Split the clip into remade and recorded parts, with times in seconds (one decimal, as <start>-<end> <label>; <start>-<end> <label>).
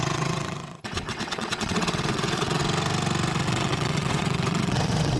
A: 0.0-2.6 remade; 2.6-3.3 recorded; 3.3-5.2 remade